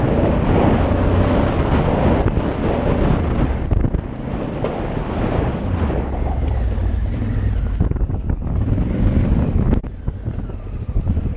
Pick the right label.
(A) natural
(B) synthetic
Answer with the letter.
A